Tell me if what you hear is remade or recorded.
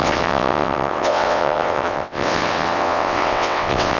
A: remade